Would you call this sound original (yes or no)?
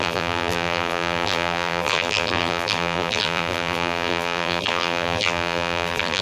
no